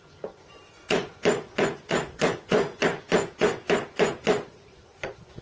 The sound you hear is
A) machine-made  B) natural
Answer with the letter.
A